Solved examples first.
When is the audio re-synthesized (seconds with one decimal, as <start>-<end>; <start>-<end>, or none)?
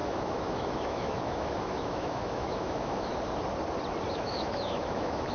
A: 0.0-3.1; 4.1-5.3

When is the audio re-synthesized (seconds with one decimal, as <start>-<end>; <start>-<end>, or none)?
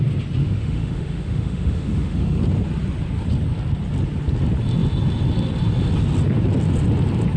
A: 0.4-2.4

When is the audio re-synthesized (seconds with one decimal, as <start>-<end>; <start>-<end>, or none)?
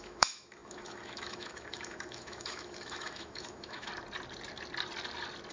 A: 0.0-3.9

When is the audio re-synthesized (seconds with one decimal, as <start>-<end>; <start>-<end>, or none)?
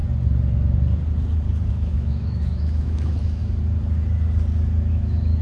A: 1.7-3.4; 4.9-5.4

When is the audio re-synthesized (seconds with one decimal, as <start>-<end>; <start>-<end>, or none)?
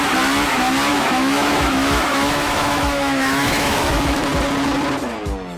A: 0.9-4.3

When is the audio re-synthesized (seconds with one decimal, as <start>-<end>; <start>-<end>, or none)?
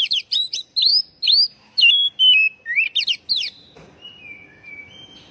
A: none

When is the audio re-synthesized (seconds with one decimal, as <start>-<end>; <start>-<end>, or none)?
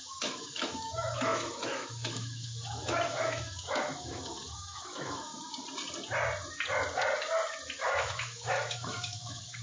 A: 0.0-5.3; 7.8-9.6